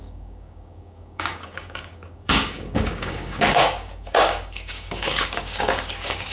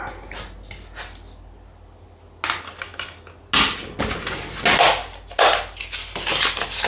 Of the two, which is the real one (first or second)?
second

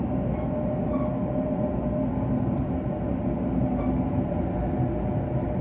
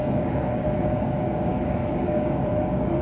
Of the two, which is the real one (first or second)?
first